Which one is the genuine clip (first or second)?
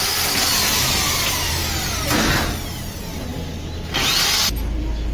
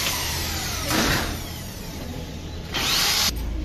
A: first